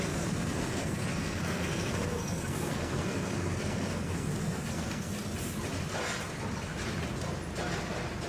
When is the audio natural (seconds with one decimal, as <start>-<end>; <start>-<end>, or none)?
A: 5.1-8.3